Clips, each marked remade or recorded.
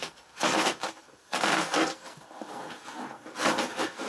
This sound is remade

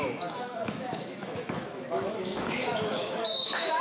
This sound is remade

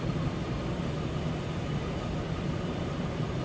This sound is recorded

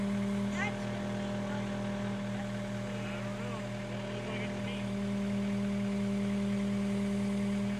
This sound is recorded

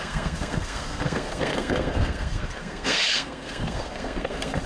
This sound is remade